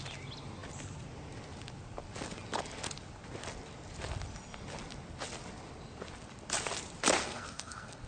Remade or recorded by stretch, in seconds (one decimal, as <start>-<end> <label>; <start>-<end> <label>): 0.0-7.2 recorded; 7.2-8.1 remade

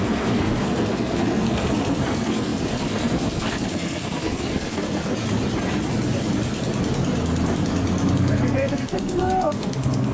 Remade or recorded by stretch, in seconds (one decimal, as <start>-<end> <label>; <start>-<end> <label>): 0.0-5.1 remade; 5.1-8.1 recorded; 8.1-10.1 remade

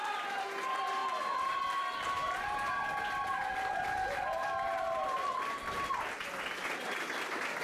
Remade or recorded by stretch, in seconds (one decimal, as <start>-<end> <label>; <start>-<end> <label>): 0.0-7.6 recorded

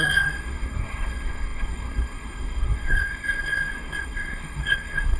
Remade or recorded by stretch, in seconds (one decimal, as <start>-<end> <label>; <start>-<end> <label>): 0.0-5.2 remade

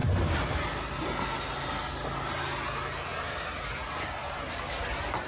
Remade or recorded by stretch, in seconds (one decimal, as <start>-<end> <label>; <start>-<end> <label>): 0.0-5.3 recorded

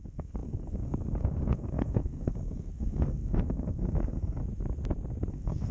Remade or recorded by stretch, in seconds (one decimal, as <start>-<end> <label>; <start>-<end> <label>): 0.0-4.4 remade; 4.4-5.3 recorded; 5.3-5.7 remade

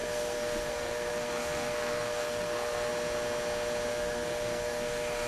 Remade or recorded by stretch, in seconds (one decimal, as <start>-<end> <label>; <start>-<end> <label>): 0.0-2.9 remade; 2.9-3.9 recorded; 3.9-5.3 remade